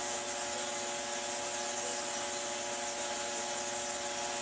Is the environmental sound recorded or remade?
recorded